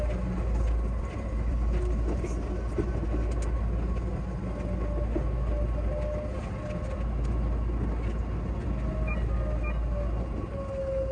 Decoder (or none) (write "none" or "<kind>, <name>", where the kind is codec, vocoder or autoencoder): none